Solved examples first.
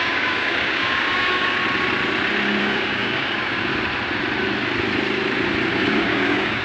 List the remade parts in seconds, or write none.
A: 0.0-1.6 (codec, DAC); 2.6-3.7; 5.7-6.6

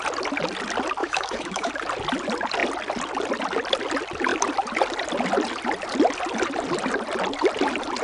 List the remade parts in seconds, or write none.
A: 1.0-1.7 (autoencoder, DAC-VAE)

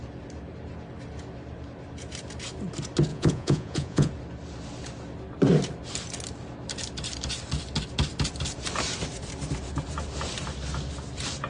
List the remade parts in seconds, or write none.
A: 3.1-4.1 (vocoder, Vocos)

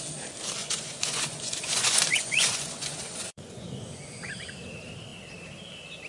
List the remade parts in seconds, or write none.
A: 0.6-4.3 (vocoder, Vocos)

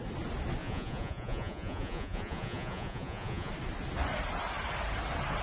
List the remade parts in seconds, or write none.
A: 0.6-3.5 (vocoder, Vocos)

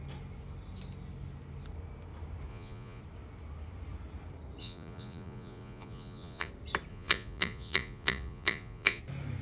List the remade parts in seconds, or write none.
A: 2.5-3.0 (vocoder, Vocos); 4.6-6.5; 6.9-9.0

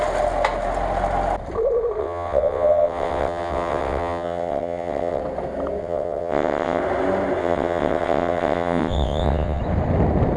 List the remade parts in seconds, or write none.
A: 2.0-5.2 (vocoder, WaveNeXt); 5.8-6.8; 7.4-9.6

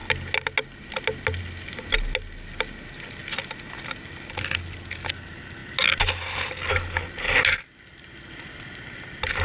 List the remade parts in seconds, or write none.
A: none